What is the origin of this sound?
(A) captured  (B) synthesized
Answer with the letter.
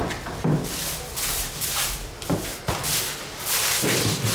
A